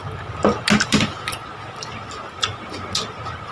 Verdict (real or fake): real